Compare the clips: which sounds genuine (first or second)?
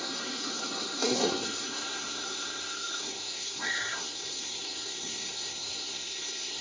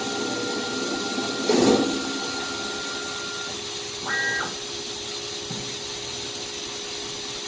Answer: second